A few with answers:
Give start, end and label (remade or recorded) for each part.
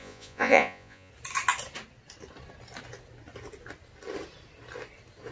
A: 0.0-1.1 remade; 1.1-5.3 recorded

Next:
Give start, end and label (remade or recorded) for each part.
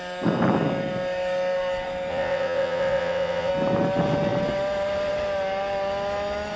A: 0.0-2.1 recorded; 2.1-3.5 remade; 3.5-6.6 recorded